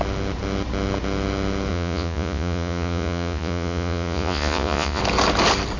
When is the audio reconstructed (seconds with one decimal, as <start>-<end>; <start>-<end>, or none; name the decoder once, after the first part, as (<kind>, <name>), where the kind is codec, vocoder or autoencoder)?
1.7-5.0 (vocoder, Vocos)